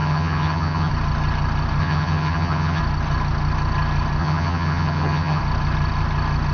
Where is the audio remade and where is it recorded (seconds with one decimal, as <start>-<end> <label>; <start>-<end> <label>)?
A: 0.0-0.9 remade; 0.9-1.8 recorded; 1.8-2.8 remade; 2.8-4.2 recorded; 4.2-5.4 remade; 5.4-6.5 recorded